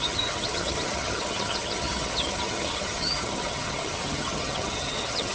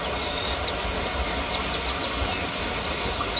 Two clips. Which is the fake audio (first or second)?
first